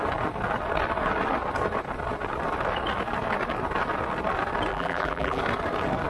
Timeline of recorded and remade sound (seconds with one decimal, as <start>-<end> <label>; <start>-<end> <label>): 0.0-4.7 recorded; 4.7-5.4 remade; 5.4-6.1 recorded